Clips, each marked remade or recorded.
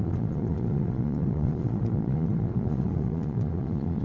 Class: remade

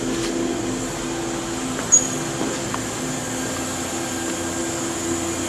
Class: recorded